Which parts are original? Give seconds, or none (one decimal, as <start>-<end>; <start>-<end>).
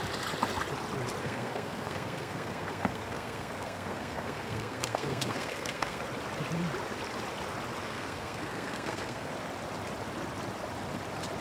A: 0.0-1.2; 6.0-7.8; 9.3-11.4